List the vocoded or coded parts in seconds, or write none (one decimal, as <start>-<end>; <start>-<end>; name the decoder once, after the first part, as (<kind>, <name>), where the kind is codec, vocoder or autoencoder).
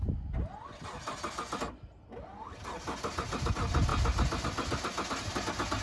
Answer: none